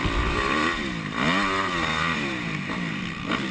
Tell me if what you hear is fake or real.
real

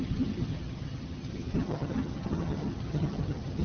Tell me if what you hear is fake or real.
fake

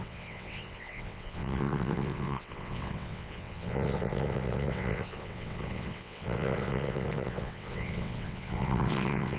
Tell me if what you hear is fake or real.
fake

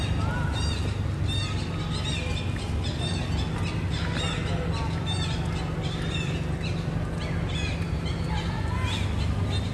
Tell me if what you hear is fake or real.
real